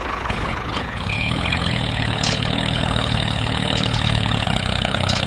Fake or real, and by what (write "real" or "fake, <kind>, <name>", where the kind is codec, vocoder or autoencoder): fake, codec, HILCodec